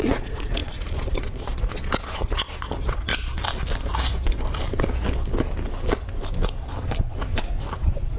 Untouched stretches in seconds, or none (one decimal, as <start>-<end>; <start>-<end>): 3.1-7.6